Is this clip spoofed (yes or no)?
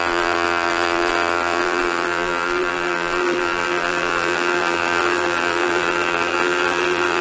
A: yes